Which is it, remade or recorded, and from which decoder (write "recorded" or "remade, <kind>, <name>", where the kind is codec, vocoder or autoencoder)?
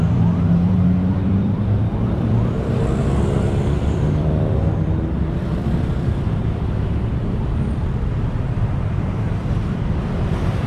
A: remade, vocoder, BigVGAN v2